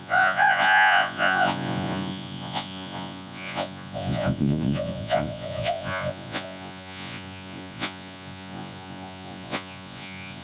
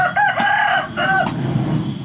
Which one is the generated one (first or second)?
first